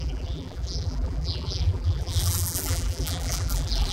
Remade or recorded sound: remade